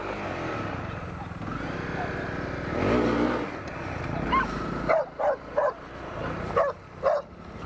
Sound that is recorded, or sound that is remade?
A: recorded